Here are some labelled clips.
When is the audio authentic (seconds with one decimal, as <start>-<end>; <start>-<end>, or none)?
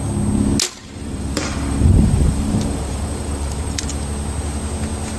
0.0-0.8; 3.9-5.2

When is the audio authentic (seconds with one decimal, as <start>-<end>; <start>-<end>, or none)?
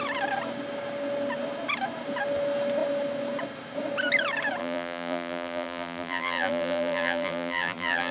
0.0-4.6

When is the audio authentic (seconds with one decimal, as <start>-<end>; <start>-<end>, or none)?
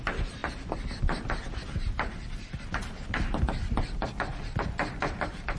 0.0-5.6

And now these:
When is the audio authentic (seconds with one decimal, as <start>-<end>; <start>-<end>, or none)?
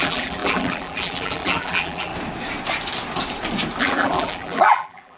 2.1-3.8